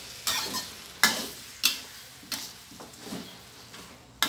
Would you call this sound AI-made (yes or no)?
no